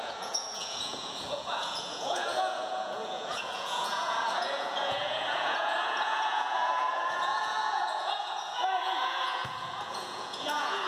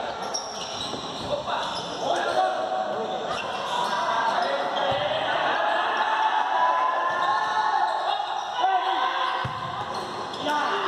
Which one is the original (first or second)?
second